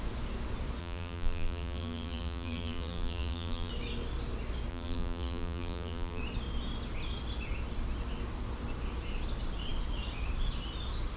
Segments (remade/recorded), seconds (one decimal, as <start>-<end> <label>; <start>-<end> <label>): 0.0-0.8 recorded; 0.8-3.7 remade; 3.7-4.7 recorded; 4.7-6.2 remade; 6.2-11.2 recorded